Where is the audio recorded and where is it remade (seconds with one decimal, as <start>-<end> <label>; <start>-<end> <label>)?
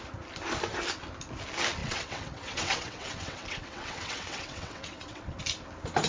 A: 0.0-1.8 recorded; 1.8-5.4 remade; 5.4-6.1 recorded